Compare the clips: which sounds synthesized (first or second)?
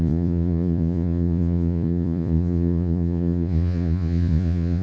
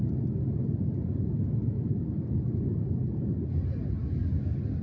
first